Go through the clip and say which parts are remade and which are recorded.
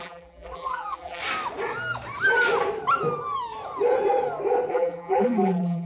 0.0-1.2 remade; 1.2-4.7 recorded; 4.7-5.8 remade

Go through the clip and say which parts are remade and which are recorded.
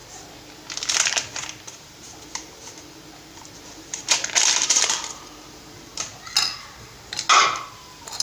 0.0-1.7 recorded; 1.7-6.1 remade; 6.1-7.4 recorded; 7.4-8.2 remade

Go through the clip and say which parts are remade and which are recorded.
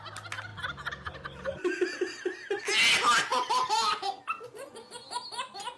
0.0-3.3 recorded; 3.3-4.2 remade; 4.2-5.8 recorded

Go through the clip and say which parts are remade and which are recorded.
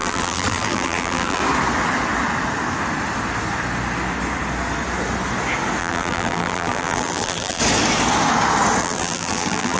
0.0-1.4 remade; 1.4-5.8 recorded; 5.8-7.6 remade; 7.6-8.8 recorded; 8.8-9.8 remade